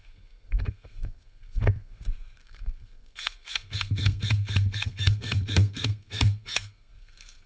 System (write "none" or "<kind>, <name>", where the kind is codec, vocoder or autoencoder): codec, SNAC